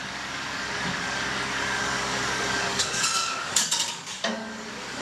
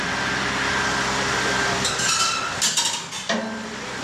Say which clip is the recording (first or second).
second